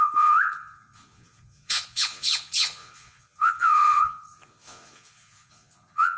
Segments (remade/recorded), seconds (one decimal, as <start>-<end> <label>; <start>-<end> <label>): 0.0-6.2 remade